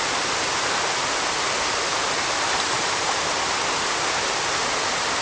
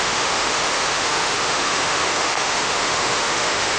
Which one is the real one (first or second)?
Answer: first